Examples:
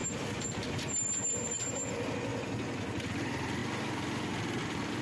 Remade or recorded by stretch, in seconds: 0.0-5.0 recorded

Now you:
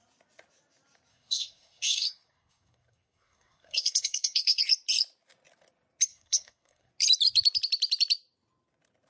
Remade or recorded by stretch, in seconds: 0.0-1.1 recorded; 1.1-4.6 remade; 4.6-6.1 recorded; 6.1-6.9 remade; 6.9-9.1 recorded

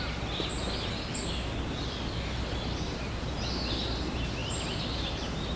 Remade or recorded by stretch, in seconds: 0.0-5.6 recorded